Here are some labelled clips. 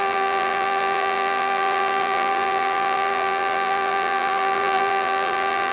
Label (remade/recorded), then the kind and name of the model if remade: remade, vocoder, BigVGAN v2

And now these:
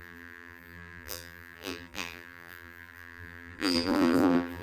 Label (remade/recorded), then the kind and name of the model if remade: remade, vocoder, BigVGAN v2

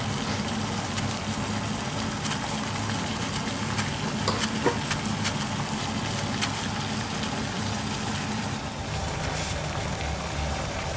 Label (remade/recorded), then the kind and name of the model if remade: recorded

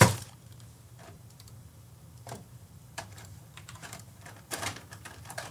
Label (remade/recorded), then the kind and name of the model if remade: remade, vocoder, BigVGAN v2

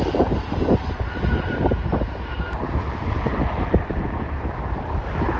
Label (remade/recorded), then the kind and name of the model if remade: recorded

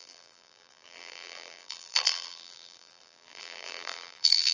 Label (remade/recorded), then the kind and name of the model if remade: remade, vocoder, BigVGAN v2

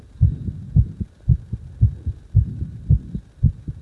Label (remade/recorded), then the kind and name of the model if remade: recorded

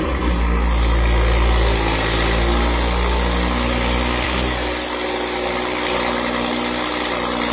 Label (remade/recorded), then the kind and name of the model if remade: recorded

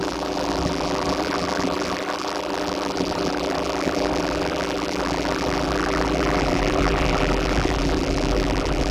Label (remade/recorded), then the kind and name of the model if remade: remade, vocoder, BigVGAN v2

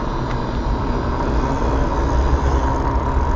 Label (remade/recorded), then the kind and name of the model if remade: recorded